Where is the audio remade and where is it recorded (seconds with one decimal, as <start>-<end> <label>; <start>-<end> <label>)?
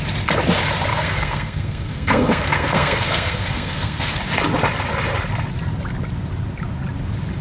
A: 0.0-0.9 recorded; 0.9-4.2 remade; 4.2-7.4 recorded